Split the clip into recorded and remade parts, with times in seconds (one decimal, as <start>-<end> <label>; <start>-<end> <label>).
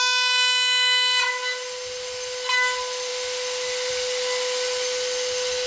0.0-5.7 recorded